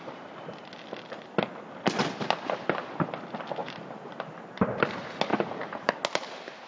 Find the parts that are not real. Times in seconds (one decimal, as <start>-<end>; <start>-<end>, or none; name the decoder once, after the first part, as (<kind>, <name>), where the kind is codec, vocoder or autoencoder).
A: 3.6-4.3 (vocoder, BigVGAN v2); 5.3-6.0